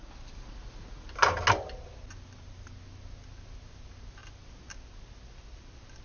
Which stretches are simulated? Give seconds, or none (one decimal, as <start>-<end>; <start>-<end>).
none